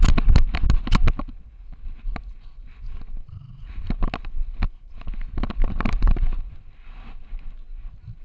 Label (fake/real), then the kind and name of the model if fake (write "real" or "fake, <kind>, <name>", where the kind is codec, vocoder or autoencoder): real